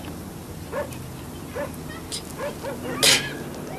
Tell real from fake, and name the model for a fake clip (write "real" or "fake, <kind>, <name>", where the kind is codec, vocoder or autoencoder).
real